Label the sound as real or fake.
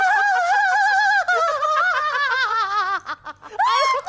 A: real